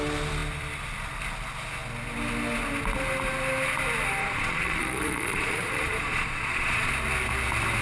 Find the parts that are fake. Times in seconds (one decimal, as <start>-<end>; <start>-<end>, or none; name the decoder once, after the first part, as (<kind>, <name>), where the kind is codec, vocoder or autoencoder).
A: 4.2-6.9 (vocoder, Vocos)